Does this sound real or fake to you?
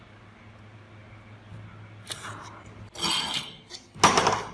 real